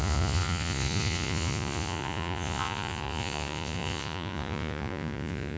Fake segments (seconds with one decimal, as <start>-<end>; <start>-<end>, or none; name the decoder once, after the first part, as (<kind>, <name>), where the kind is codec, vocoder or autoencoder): 0.0-5.6 (vocoder, Vocos)

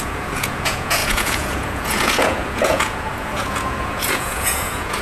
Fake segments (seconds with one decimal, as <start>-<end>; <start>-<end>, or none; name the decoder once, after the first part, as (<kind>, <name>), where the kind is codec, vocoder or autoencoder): 0.0-5.0 (vocoder, Vocos)

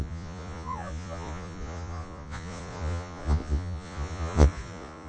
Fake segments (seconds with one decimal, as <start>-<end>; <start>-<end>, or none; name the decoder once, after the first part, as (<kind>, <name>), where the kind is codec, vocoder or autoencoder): 0.0-5.1 (vocoder, Vocos)

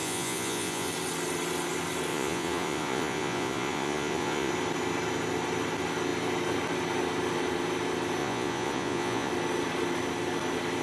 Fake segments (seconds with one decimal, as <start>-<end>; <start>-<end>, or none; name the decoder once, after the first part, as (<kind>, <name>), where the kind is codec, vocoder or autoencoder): 0.0-0.9 (vocoder, Vocos); 2.1-4.5; 8.2-9.3

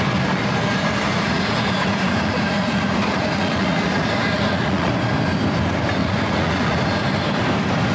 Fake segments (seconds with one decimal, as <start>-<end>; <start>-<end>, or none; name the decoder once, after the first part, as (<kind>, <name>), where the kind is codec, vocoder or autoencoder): 1.1-4.9 (vocoder, Vocos); 6.0-6.8

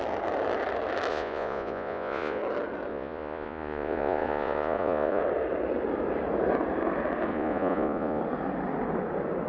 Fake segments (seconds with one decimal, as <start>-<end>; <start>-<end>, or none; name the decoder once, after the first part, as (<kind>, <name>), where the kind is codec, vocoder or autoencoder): 1.1-2.4 (vocoder, Vocos); 2.9-5.2; 7.3-8.2